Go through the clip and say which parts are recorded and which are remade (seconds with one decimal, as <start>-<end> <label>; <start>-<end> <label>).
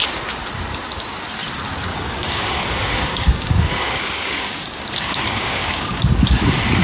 0.0-1.9 recorded; 1.9-6.0 remade; 6.0-6.8 recorded